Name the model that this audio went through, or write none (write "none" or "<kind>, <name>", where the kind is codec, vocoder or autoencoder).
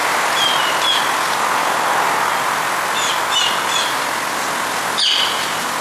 none